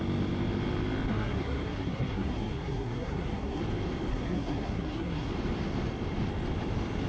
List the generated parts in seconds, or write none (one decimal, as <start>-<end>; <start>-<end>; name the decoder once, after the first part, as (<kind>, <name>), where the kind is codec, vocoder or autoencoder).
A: 1.1-3.6 (codec, SNAC); 4.1-5.3